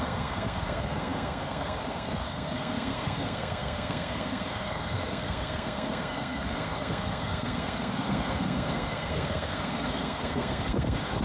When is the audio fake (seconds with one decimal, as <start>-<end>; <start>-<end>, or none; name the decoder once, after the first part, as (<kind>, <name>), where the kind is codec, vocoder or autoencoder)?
0.0-11.2 (codec, SNAC)